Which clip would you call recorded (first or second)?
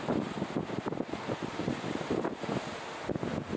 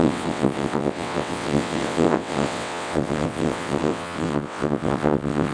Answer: first